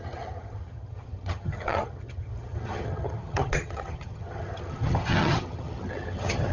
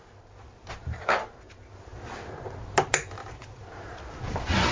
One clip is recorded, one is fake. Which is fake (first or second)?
first